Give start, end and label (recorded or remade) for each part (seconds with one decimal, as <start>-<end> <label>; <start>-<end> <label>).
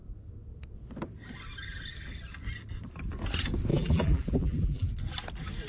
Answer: 0.0-3.7 recorded; 3.7-4.9 remade; 4.9-5.7 recorded